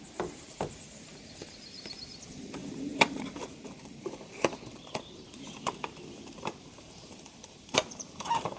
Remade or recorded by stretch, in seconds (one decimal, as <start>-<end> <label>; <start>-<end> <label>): 0.0-8.6 remade